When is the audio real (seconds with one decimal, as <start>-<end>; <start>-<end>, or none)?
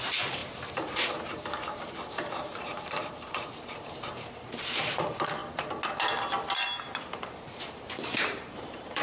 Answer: 5.4-7.5